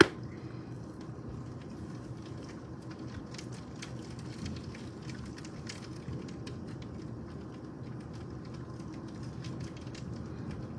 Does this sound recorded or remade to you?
recorded